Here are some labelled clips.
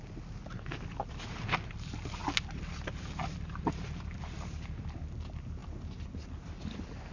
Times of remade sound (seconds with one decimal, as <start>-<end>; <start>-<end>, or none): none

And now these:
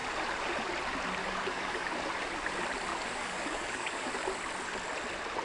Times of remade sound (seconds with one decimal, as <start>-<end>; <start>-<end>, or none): 1.2-2.0; 2.9-4.1

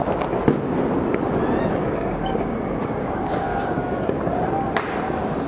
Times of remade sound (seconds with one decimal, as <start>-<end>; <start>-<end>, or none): 1.8-4.2